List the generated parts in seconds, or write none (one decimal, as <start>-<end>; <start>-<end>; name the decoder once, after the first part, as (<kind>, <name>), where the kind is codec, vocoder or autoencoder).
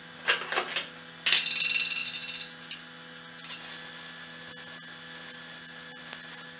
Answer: none